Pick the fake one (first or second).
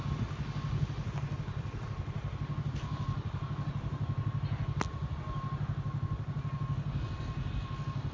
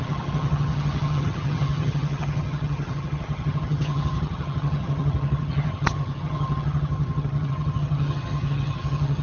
second